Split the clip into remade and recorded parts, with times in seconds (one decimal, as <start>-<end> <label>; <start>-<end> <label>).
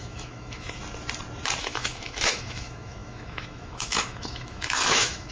0.0-0.8 remade; 0.8-1.6 recorded; 1.6-5.3 remade